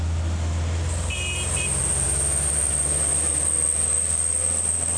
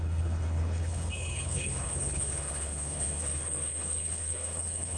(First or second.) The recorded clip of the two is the first